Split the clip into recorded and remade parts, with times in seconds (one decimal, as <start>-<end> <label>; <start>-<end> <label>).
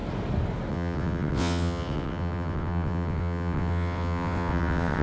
0.0-0.7 recorded; 0.7-5.0 remade